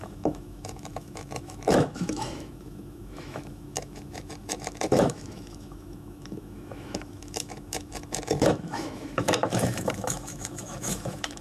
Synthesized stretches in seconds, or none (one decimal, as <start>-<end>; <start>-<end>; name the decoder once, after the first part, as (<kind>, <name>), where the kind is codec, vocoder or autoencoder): 0.0-11.4 (autoencoder, DAC-VAE)